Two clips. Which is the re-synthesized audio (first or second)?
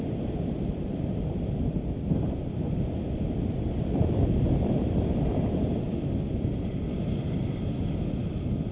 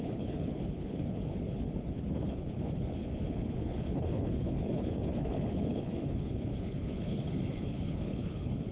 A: second